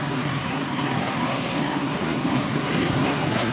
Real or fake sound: fake